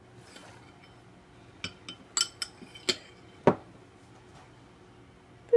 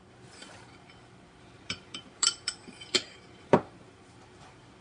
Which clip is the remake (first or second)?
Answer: second